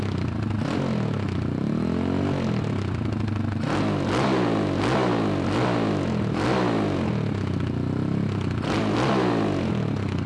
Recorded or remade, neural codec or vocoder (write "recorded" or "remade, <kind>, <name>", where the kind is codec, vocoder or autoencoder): recorded